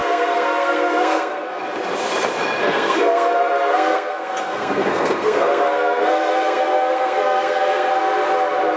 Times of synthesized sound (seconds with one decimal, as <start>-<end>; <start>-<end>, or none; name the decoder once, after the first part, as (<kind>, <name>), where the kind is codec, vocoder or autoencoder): 0.0-1.6 (codec, SNAC); 2.6-7.9